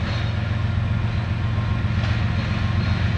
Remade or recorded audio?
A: recorded